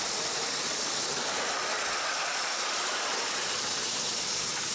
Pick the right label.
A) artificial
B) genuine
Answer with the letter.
B